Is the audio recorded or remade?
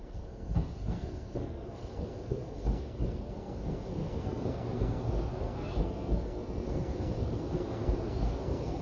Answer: remade